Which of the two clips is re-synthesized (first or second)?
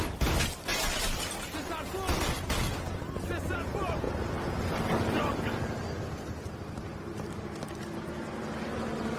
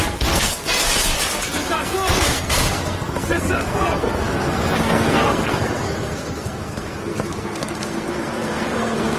second